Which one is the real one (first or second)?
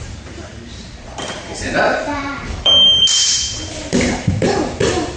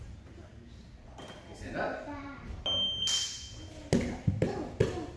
second